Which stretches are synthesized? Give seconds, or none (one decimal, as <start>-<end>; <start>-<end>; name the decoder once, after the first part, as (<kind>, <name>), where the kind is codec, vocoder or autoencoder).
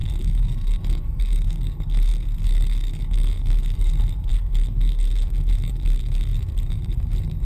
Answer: 0.0-7.4 (codec, SNAC)